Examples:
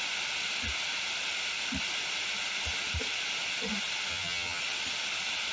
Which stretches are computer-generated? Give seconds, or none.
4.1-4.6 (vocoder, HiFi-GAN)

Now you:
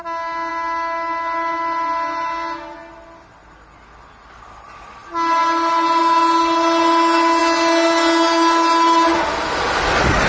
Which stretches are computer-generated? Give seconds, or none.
none

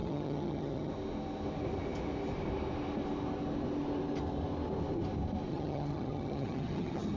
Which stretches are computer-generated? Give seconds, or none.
0.0-0.9 (vocoder, HiFi-GAN); 5.5-7.2

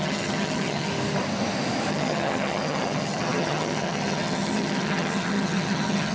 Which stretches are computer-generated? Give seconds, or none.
0.0-0.9 (vocoder, HiFi-GAN); 1.9-6.1

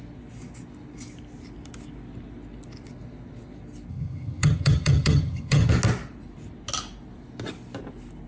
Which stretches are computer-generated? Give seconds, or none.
3.9-5.7 (vocoder, HiFi-GAN)

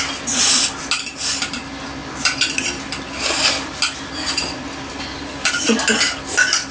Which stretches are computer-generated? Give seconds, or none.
none

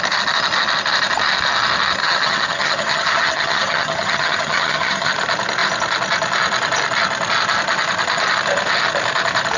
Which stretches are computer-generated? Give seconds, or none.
2.0-5.1 (vocoder, HiFi-GAN)

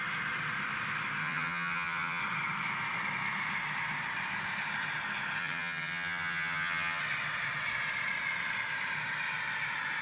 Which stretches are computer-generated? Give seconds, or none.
1.2-2.2 (vocoder, HiFi-GAN); 5.4-7.0